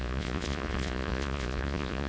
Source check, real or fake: fake